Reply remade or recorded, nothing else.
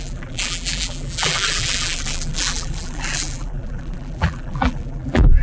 remade